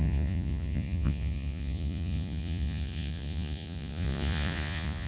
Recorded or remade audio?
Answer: remade